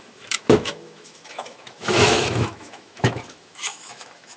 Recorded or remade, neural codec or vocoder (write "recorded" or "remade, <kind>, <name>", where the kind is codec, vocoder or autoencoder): remade, autoencoder, DAC-VAE